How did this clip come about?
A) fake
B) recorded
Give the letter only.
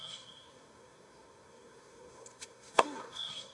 A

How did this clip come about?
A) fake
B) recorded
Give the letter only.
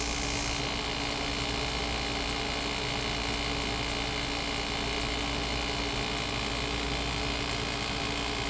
A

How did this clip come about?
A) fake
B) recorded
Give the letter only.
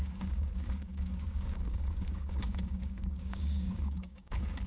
A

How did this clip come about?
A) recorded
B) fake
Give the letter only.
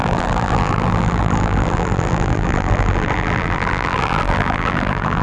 B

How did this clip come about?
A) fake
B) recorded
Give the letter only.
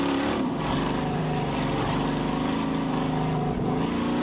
B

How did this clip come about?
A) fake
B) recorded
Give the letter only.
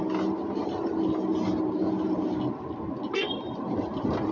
B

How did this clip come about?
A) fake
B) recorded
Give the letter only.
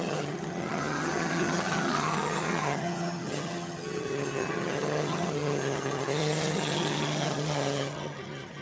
A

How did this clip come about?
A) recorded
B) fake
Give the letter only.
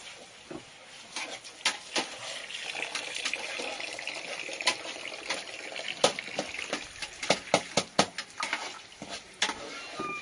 A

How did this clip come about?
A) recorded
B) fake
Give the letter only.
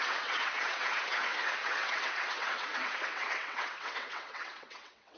B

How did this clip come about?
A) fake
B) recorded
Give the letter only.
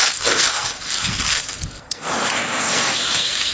A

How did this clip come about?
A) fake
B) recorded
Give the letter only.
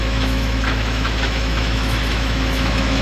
A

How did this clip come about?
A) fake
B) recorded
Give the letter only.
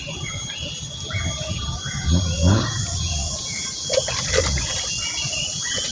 B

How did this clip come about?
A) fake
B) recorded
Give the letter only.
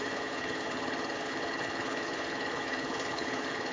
A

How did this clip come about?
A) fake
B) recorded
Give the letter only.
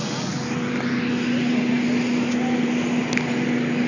B